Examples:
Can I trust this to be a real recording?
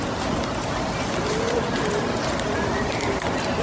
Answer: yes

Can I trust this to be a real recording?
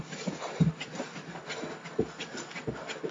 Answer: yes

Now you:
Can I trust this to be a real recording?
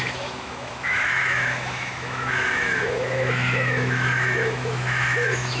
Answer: no